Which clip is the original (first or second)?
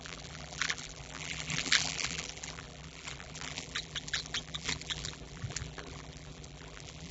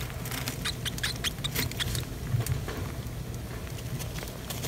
second